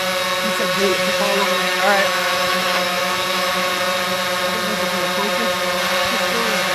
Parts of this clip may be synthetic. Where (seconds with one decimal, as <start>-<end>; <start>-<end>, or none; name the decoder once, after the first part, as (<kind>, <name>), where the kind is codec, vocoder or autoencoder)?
0.9-3.7 (autoencoder, DAC-VAE)

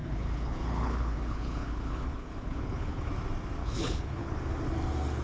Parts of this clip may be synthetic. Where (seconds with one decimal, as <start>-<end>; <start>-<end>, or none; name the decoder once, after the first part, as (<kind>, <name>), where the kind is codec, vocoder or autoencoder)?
0.0-3.1 (codec, HILCodec); 3.6-4.4